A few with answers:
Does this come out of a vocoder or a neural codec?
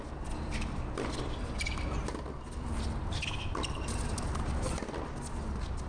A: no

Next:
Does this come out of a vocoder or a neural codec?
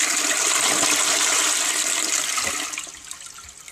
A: no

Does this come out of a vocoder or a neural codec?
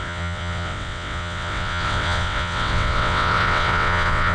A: yes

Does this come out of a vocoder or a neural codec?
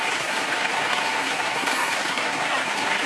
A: yes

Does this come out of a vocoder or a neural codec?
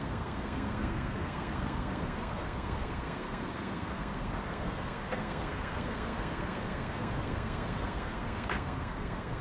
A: yes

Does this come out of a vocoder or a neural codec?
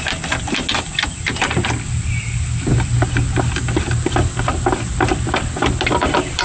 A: no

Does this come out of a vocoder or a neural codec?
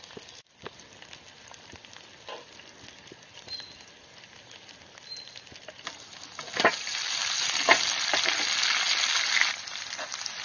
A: no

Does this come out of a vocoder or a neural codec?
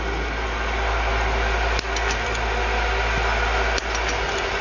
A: no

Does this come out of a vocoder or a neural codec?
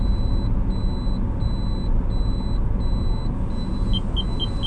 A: no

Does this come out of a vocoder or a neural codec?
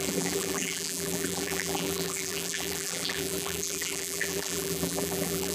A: yes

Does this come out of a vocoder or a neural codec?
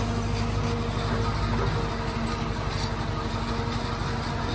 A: no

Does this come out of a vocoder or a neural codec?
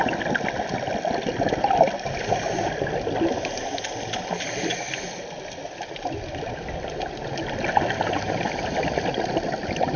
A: no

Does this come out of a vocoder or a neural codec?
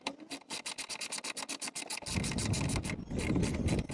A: no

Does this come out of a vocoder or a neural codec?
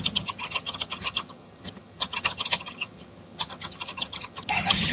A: yes